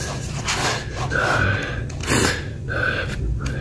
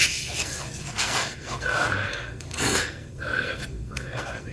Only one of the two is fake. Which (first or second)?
second